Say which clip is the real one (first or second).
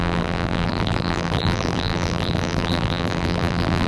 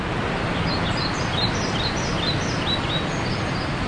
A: second